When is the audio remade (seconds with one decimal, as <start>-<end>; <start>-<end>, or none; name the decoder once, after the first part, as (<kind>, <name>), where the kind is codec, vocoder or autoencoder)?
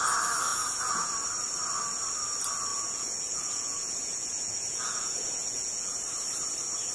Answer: 0.5-1.1 (vocoder, Vocos); 2.7-5.9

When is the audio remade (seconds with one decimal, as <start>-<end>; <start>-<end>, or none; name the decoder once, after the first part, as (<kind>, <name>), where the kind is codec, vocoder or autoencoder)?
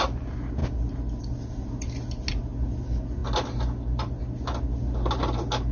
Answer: none